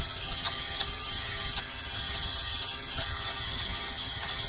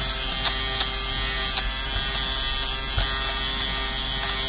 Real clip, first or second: second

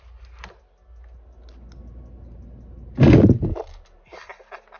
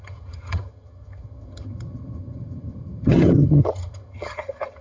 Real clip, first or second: first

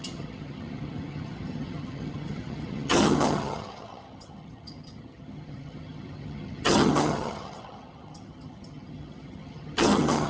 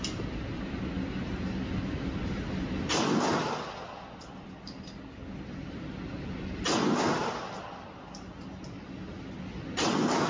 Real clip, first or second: second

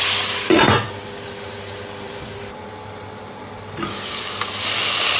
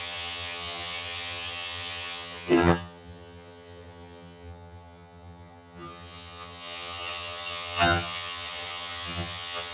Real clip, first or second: first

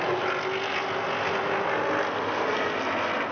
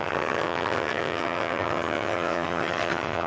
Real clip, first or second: first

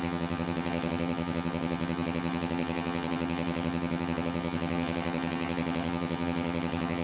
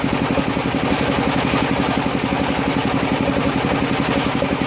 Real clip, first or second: second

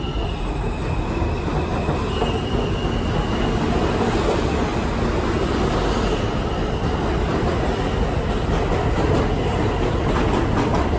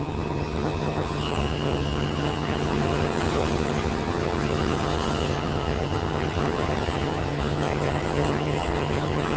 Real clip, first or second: first